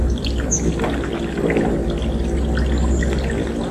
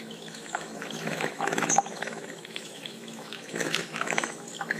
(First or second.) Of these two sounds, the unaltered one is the first